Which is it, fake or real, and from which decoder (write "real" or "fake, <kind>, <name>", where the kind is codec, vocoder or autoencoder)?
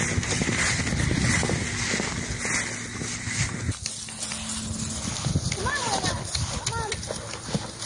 real